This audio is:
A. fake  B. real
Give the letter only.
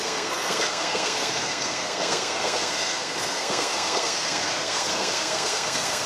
A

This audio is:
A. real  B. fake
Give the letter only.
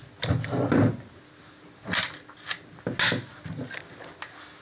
A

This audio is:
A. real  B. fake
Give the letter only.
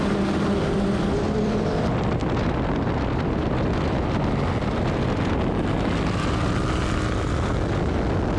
A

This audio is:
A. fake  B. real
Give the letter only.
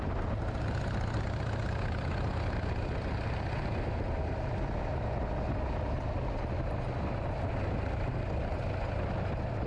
B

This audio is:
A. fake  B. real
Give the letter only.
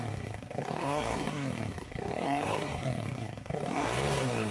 A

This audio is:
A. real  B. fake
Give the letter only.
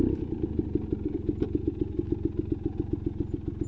A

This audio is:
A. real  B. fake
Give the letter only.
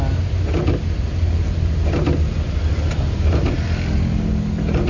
A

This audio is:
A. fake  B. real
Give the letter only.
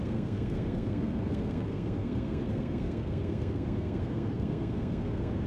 A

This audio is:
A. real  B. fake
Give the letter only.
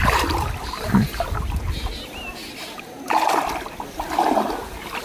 A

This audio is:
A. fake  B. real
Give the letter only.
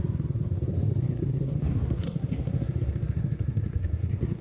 A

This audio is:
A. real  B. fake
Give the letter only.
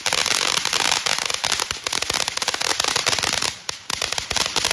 A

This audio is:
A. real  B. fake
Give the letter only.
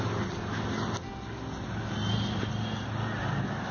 A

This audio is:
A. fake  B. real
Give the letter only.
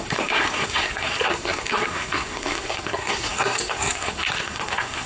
A